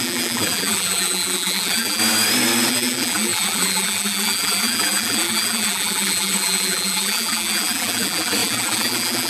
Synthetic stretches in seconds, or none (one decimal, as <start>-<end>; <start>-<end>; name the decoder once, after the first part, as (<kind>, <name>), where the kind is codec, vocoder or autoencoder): 0.0-2.0 (vocoder, BigVGAN v2); 2.7-9.3

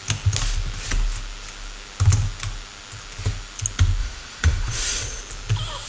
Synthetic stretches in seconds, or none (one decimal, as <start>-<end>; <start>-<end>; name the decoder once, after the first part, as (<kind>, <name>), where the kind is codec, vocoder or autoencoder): 4.0-5.2 (vocoder, Vocos)

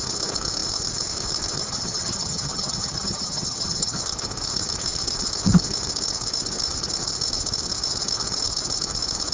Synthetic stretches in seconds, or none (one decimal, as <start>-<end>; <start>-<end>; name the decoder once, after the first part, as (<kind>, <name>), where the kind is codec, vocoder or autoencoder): 1.6-4.0 (vocoder, HiFi-GAN)

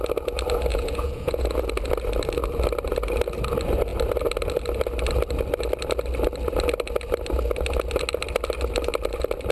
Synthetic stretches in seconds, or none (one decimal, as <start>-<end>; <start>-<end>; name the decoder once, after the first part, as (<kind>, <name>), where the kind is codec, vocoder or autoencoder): 0.7-1.7 (vocoder, Vocos)

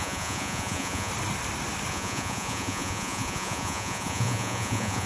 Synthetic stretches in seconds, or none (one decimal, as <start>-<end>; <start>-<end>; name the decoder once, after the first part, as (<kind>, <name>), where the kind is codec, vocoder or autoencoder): 0.0-1.1 (vocoder, Vocos); 1.9-5.1

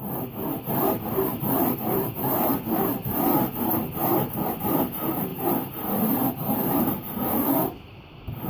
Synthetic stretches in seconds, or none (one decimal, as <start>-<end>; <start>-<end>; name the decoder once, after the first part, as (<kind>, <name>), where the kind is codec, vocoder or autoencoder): 1.3-2.5 (vocoder, BigVGAN v2)

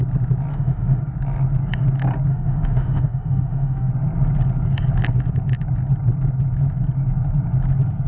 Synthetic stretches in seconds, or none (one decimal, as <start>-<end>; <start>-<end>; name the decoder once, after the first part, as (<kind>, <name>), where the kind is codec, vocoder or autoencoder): 0.5-1.0 (autoencoder, DAC-VAE); 2.3-3.9

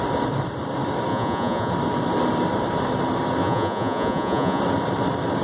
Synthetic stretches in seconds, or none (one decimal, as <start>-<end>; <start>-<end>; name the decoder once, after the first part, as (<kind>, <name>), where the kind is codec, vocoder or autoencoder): 1.1-1.7 (vocoder, Vocos); 3.4-4.6